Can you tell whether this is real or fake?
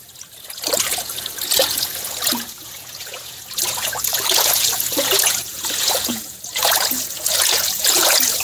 fake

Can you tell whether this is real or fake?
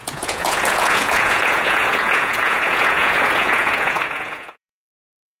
fake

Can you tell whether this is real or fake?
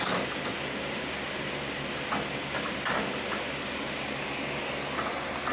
real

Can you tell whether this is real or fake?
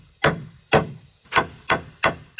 real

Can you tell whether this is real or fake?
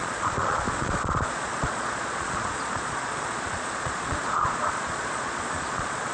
fake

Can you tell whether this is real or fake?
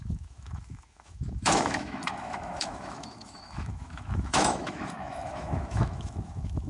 fake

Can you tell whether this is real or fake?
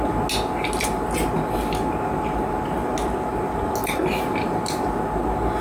real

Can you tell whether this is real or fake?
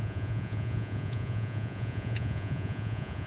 fake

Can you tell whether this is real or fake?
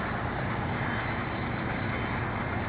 real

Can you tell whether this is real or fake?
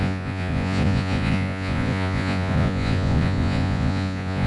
fake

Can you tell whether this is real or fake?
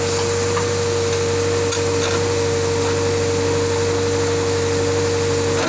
real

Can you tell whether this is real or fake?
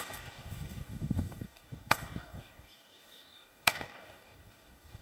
fake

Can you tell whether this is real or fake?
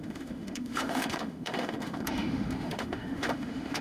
fake